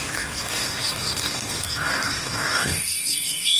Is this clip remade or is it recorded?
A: remade